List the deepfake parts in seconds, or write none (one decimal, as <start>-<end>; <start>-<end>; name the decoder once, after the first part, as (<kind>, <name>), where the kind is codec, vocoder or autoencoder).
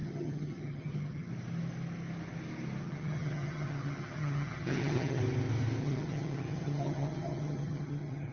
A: 0.0-1.3 (vocoder, HiFi-GAN); 2.8-5.2; 5.8-8.3